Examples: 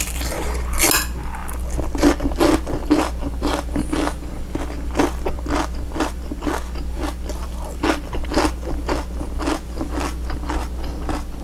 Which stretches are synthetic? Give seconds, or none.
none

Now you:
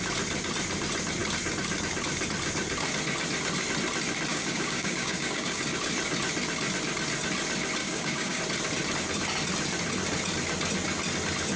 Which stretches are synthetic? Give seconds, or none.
4.3-5.6 (codec, DAC); 7.8-8.4

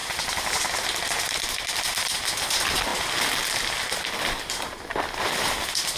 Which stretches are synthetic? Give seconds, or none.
0.0-1.2 (vocoder, BigVGAN v2)

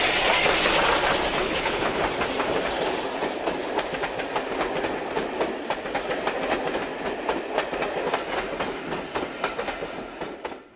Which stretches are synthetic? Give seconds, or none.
1.4-2.0 (codec, HILCodec)

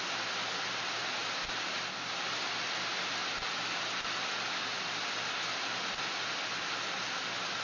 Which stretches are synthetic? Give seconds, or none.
none

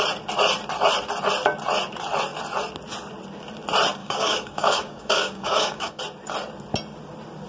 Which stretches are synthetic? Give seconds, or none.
4.0-6.0 (codec, DAC)

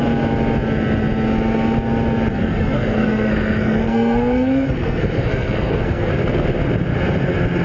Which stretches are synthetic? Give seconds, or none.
2.3-6.1 (codec, SNAC)